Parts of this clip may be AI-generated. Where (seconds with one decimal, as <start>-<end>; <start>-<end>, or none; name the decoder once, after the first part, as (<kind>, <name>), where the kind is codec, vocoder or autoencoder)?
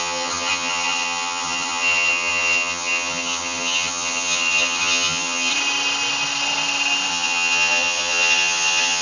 0.0-5.5 (vocoder, HiFi-GAN); 7.1-9.0